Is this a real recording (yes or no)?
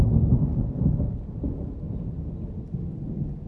yes